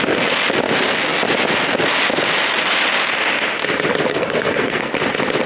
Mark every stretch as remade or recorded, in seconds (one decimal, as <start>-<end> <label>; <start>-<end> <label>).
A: 0.0-4.1 recorded; 4.1-4.9 remade; 4.9-5.5 recorded